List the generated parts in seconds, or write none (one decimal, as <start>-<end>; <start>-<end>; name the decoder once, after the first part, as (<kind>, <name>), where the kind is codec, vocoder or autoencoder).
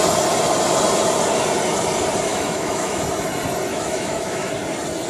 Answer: 2.3-3.0 (autoencoder, DAC-VAE); 3.7-4.5